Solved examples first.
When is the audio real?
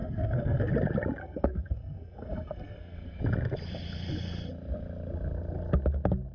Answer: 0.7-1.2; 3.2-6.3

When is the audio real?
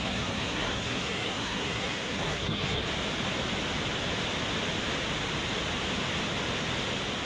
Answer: 2.8-7.3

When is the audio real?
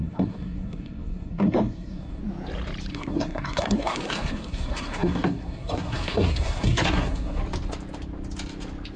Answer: 2.2-2.9; 7.4-9.0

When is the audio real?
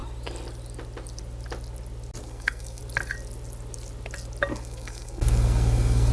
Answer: 0.0-2.2; 2.8-4.5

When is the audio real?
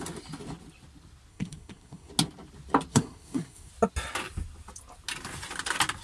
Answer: 0.0-1.3; 2.1-2.9; 3.7-6.0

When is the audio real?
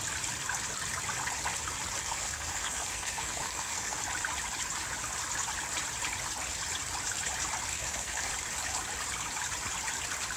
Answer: 0.0-2.0; 4.0-7.7; 8.3-10.4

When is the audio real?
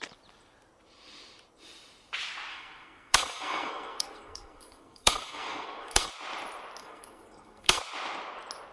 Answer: 0.0-2.5; 6.1-6.8; 7.8-8.7